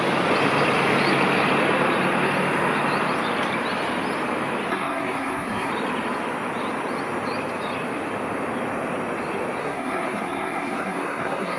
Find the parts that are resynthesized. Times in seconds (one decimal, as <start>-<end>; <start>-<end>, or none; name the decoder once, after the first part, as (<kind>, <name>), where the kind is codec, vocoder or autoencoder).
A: 4.7-5.7 (codec, SNAC); 9.6-11.6